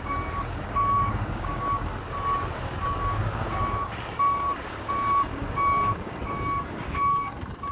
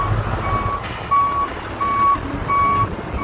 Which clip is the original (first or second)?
second